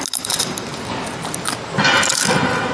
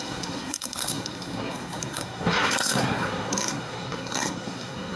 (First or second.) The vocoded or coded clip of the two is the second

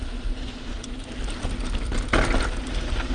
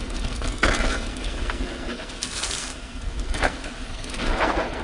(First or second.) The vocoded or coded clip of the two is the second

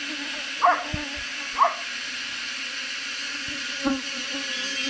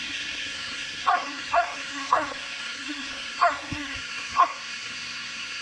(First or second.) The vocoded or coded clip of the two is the second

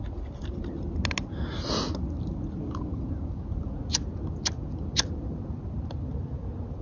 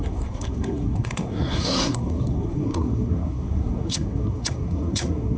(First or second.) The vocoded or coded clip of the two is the second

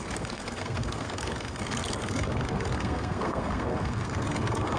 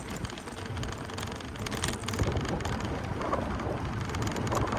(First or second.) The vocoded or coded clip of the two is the first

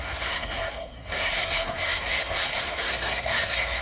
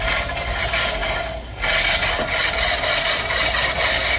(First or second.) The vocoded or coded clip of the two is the first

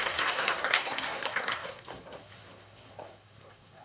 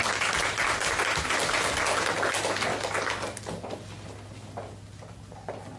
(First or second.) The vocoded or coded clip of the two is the first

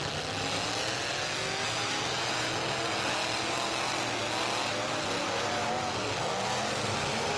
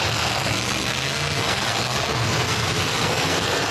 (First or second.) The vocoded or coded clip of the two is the second